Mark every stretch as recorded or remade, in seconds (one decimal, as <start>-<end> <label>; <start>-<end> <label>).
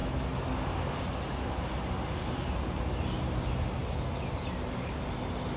0.0-5.6 recorded